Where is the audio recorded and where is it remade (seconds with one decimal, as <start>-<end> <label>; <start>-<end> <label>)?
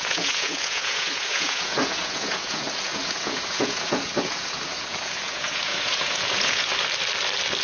0.0-6.7 remade; 6.7-7.6 recorded